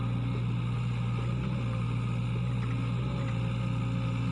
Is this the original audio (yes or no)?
yes